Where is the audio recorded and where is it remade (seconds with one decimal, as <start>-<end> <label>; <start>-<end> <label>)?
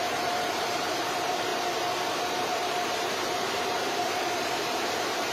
0.0-1.5 remade; 1.5-2.3 recorded; 2.3-5.3 remade